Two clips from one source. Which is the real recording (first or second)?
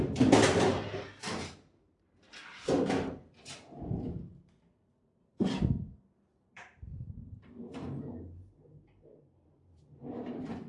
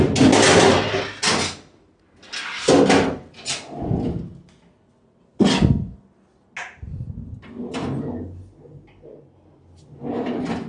second